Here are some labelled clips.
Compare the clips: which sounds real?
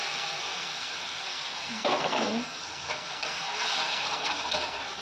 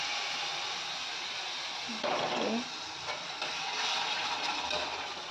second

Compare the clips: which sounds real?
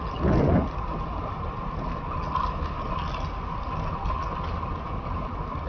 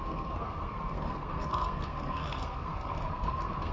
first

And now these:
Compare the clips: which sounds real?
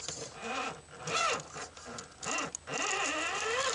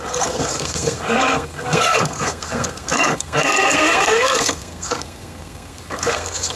first